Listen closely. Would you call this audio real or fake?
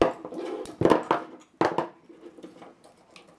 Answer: real